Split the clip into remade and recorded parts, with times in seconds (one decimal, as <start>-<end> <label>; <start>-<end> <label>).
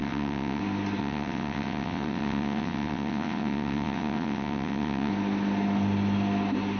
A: 0.0-0.6 remade; 0.6-1.0 recorded; 1.0-5.1 remade; 5.1-6.8 recorded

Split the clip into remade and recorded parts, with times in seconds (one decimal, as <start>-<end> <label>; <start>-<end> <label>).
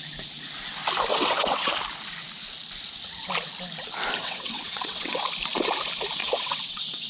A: 0.0-1.1 recorded; 1.1-1.7 remade; 1.7-4.2 recorded; 4.2-5.2 remade; 5.2-6.2 recorded; 6.2-7.1 remade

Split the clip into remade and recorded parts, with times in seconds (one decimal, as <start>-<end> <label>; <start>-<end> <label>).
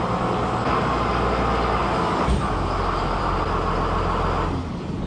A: 0.0-5.1 recorded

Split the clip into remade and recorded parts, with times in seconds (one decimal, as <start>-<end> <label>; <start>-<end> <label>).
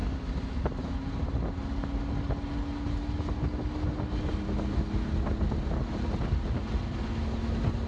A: 0.0-7.9 recorded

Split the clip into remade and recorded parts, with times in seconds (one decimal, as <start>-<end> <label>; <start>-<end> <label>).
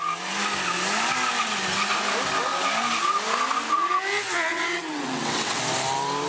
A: 0.0-4.5 recorded; 4.5-5.6 remade; 5.6-6.3 recorded